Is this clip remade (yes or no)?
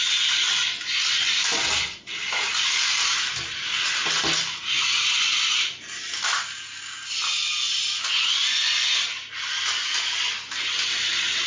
no